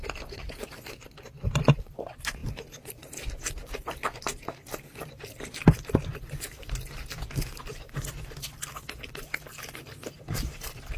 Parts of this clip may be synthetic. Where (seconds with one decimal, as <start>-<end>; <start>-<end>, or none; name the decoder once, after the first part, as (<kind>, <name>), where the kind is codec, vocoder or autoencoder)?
none